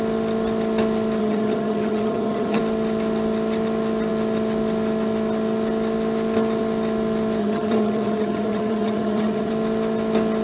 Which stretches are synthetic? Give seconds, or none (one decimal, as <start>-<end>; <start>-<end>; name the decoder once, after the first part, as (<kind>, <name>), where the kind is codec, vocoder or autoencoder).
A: 1.2-2.6 (vocoder, HiFi-GAN); 7.4-9.5